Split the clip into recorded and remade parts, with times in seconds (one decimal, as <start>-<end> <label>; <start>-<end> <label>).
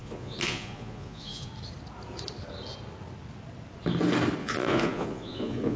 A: 0.0-1.5 remade; 1.5-4.4 recorded; 4.4-5.8 remade